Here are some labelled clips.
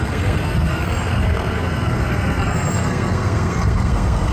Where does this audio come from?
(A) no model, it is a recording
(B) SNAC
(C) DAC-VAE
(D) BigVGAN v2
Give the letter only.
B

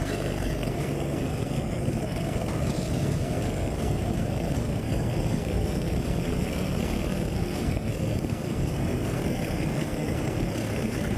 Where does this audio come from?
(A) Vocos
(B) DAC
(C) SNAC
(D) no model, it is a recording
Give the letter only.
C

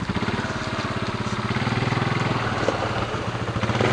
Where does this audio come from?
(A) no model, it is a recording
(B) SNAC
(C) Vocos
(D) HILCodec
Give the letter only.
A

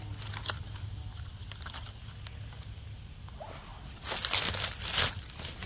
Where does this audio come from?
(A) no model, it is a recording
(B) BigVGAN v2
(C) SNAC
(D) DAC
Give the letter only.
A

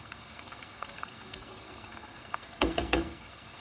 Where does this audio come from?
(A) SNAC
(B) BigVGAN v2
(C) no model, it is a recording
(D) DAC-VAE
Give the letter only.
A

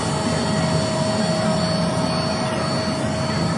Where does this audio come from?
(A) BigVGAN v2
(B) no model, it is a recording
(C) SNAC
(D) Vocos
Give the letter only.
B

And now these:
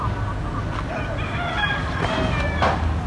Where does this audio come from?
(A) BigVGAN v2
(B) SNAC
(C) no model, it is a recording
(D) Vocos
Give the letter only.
C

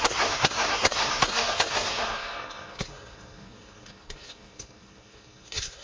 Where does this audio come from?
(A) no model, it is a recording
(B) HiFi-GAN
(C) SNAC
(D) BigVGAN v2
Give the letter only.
C